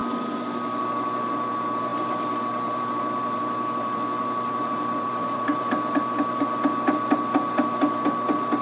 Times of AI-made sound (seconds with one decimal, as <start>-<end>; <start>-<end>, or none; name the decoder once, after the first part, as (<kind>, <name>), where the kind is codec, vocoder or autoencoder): 0.0-0.8 (vocoder, BigVGAN v2); 1.9-6.4

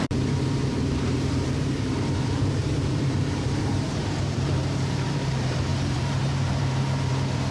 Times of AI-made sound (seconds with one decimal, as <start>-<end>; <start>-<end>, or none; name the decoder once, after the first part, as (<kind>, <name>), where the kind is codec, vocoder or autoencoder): 0.0-7.5 (vocoder, BigVGAN v2)